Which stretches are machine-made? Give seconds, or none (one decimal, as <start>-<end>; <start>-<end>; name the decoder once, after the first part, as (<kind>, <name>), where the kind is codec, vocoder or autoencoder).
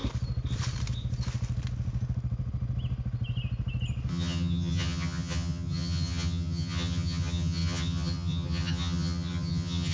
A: 4.1-9.9 (vocoder, HiFi-GAN)